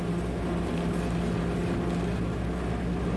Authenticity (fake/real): real